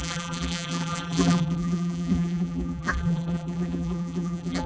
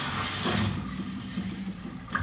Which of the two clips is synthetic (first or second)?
first